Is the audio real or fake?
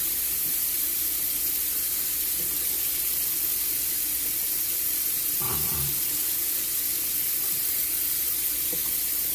real